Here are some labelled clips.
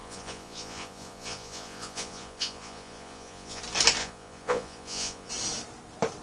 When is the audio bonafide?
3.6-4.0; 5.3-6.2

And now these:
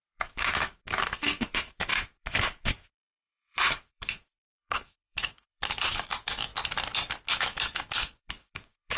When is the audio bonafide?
6.5-7.3

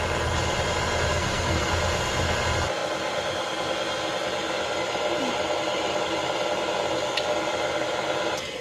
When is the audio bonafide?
0.0-1.1; 1.7-8.6

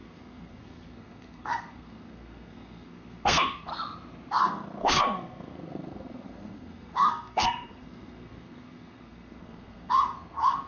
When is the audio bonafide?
3.7-4.3